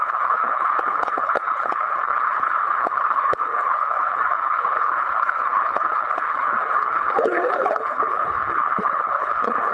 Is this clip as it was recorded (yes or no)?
no